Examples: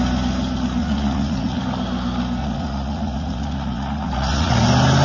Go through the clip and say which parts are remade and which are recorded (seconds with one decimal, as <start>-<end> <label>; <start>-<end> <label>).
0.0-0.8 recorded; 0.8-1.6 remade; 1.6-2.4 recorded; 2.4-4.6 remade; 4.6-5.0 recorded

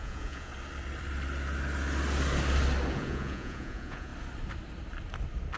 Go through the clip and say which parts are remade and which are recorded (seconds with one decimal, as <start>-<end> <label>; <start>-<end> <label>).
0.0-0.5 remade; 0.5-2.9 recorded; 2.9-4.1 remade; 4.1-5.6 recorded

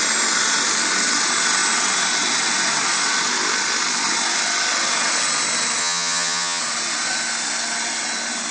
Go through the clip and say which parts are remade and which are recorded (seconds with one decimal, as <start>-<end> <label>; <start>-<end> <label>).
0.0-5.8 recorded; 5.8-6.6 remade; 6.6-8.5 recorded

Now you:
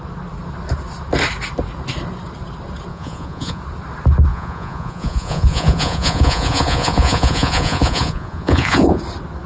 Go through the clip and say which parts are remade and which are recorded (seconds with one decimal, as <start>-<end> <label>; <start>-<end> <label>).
0.0-2.9 recorded; 2.9-3.6 remade; 3.6-4.3 recorded; 4.3-9.0 remade; 9.0-9.5 recorded